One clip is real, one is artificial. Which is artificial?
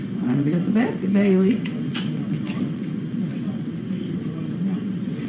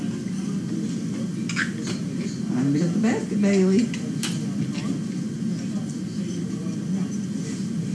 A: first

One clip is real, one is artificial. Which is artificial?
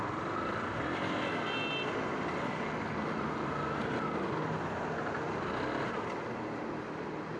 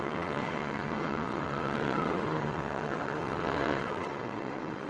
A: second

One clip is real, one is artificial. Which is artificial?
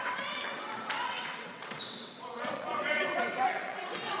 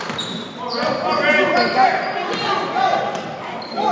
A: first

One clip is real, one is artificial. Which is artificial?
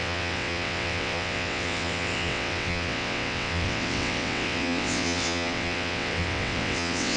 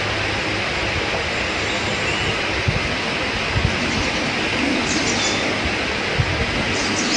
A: first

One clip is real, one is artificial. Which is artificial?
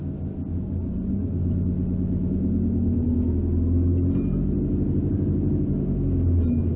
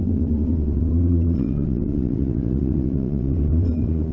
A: second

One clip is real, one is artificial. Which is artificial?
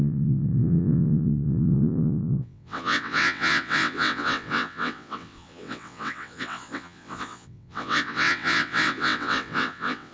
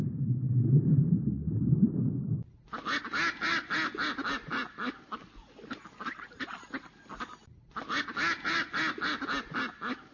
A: first